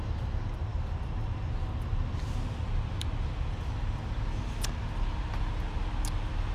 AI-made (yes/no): no